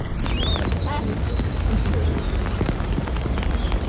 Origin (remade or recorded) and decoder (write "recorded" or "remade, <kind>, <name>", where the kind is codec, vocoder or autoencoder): recorded